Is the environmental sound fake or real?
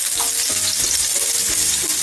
real